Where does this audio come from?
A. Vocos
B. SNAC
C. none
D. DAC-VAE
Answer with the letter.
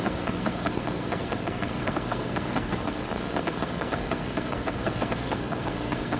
B